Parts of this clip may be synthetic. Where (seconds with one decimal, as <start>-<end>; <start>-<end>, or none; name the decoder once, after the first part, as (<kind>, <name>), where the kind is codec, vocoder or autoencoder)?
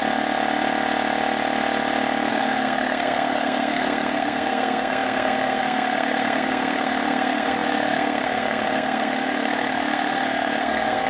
2.3-11.1 (codec, SNAC)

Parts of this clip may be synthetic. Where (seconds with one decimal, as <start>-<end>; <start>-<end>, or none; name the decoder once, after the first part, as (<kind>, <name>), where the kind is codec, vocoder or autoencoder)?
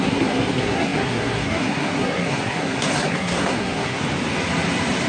0.0-4.0 (codec, SNAC)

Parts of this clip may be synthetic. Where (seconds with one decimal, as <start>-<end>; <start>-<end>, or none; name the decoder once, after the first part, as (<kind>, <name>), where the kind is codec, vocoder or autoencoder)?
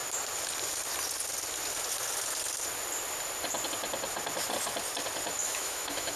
5.4-6.2 (autoencoder, DAC-VAE)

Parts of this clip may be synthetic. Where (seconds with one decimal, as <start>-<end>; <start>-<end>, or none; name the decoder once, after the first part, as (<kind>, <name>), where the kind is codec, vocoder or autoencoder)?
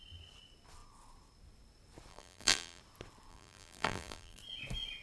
2.1-2.8 (vocoder, BigVGAN v2); 3.3-4.4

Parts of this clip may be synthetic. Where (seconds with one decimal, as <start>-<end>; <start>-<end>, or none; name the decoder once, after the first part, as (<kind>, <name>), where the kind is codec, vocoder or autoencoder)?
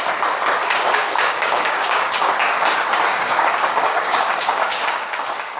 1.0-2.3 (codec, DAC); 3.1-5.6